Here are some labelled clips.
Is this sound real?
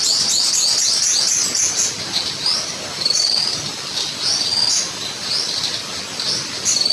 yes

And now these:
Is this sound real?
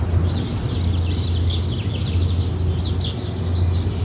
yes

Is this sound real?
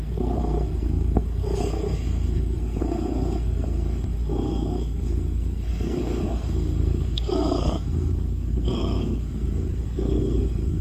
no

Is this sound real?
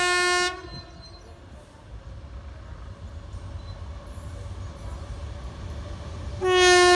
yes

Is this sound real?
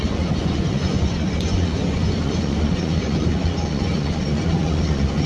no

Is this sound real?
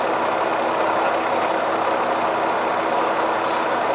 yes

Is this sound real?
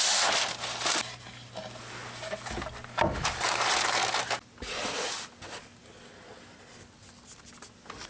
yes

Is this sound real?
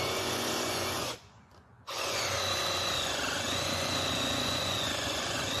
no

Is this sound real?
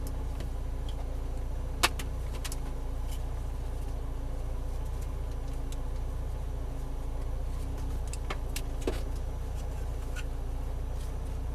yes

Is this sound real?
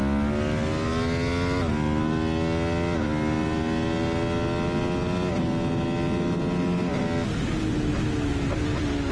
yes